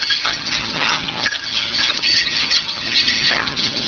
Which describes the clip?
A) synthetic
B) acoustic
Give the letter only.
A